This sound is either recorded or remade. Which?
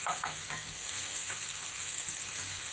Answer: remade